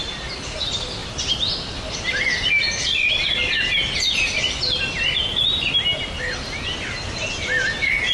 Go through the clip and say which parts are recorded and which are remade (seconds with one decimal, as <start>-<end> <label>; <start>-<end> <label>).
0.0-8.1 recorded